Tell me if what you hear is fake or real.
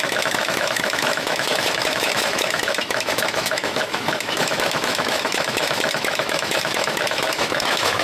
fake